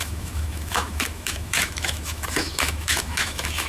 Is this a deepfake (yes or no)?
yes